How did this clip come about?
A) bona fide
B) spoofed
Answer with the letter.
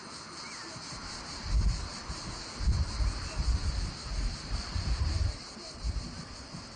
A